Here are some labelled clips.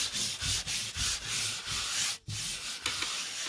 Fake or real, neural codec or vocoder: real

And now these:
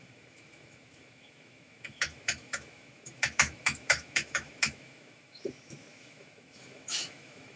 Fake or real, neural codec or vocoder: fake, autoencoder, DAC-VAE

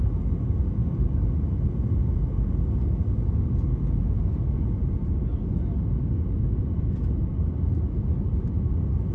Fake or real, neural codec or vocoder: real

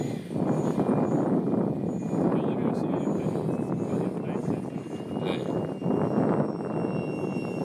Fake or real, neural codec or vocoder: real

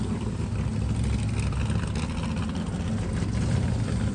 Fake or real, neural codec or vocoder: real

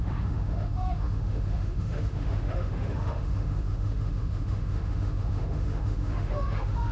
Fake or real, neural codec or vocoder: fake, autoencoder, DAC-VAE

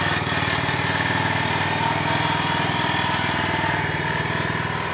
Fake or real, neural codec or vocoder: real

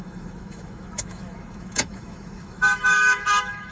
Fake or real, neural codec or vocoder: fake, autoencoder, DAC-VAE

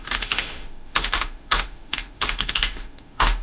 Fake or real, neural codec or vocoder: fake, autoencoder, DAC-VAE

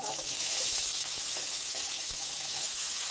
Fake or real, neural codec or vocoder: fake, autoencoder, DAC-VAE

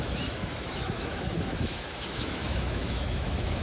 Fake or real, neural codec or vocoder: fake, autoencoder, DAC-VAE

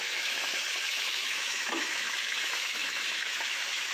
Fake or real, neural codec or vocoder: fake, autoencoder, DAC-VAE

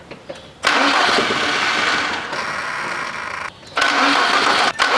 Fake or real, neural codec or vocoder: real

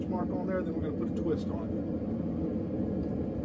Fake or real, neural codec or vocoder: real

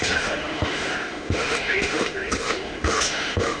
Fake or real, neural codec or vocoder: fake, autoencoder, DAC-VAE